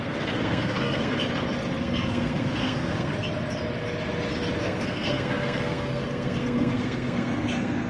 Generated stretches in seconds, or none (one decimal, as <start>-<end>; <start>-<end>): 0.0-1.1; 1.8-3.1; 4.6-7.9